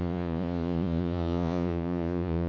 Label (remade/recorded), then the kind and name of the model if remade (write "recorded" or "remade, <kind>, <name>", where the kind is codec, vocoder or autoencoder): remade, vocoder, Vocos